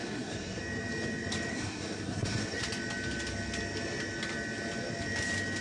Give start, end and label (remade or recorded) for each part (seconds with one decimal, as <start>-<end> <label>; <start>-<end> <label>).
0.0-0.6 remade; 0.6-1.5 recorded; 1.5-2.6 remade; 2.6-5.6 recorded